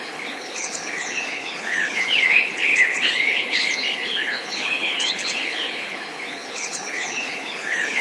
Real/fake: fake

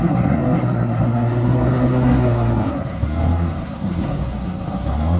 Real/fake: fake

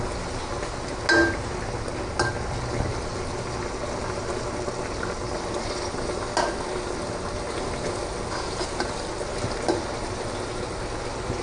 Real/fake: real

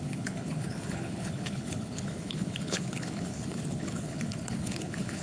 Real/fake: fake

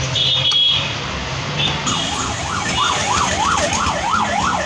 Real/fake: real